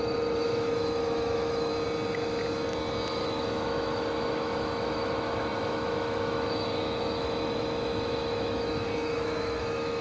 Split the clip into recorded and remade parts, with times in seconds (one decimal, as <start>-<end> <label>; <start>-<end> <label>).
0.0-1.7 remade; 1.7-3.1 recorded; 3.1-10.0 remade